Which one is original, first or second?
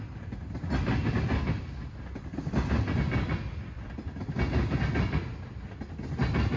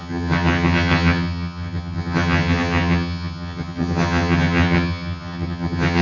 first